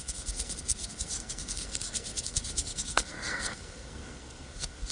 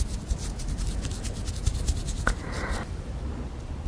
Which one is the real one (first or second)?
second